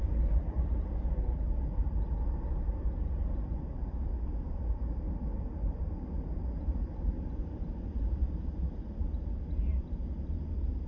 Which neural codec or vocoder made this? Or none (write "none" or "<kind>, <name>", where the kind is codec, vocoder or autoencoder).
none